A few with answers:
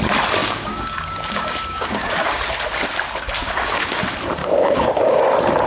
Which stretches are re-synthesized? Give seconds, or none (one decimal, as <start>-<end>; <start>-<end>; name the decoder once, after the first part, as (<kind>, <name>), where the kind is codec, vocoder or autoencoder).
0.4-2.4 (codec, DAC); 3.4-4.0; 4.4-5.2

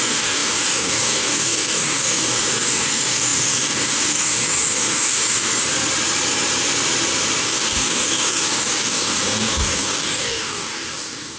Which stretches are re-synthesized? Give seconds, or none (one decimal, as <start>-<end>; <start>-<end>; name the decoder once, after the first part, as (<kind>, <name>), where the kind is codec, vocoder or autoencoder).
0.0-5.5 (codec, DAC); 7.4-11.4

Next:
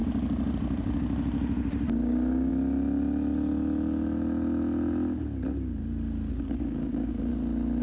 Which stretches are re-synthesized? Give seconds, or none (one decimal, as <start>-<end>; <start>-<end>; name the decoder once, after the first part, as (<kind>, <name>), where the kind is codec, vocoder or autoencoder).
1.9-2.5 (codec, DAC); 6.3-7.3

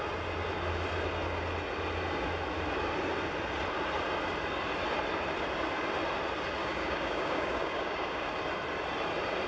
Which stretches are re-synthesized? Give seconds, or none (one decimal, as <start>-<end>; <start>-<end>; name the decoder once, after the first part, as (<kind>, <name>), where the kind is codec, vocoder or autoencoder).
6.6-8.3 (codec, DAC)